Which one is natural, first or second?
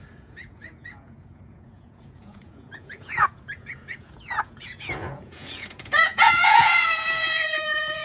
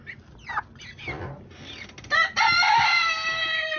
second